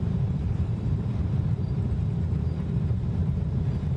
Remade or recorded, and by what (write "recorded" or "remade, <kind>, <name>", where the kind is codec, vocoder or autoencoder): remade, vocoder, BigVGAN v2